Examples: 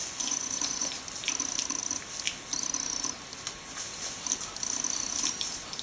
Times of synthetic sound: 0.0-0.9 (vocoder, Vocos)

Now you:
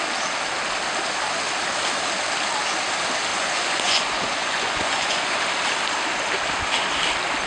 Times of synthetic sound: 3.3-5.4 (vocoder, Vocos)

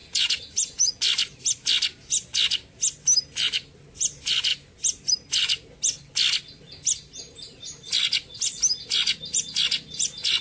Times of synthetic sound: 0.0-1.0 (vocoder, Vocos)

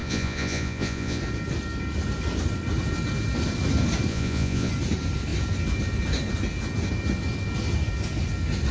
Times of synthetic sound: 0.0-1.2 (vocoder, Vocos); 4.1-4.7